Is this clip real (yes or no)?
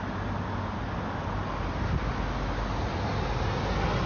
yes